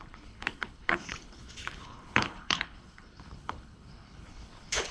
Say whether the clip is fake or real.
fake